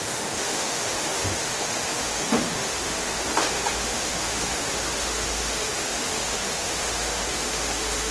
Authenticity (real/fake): fake